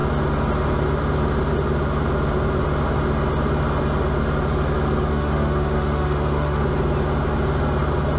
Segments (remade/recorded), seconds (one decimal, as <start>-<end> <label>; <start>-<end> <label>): 0.0-5.1 recorded; 5.1-6.6 remade; 6.6-8.2 recorded